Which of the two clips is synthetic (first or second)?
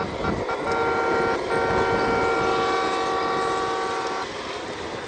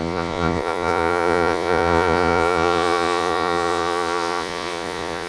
second